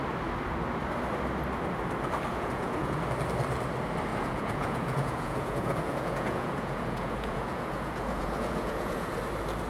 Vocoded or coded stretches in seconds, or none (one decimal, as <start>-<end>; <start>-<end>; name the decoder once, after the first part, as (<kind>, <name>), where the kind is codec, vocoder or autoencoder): 2.3-3.0 (vocoder, Vocos); 4.1-9.2